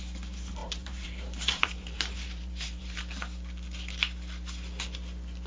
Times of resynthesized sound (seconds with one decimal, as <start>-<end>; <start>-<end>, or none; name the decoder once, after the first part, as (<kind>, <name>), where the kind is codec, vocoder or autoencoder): 0.6-3.0 (vocoder, BigVGAN v2)